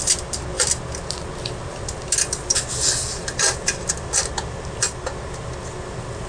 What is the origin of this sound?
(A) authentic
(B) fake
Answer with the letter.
A